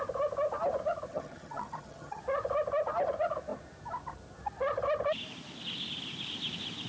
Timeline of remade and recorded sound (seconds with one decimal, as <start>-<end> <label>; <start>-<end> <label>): 0.0-1.1 recorded; 1.1-2.2 remade; 2.2-6.9 recorded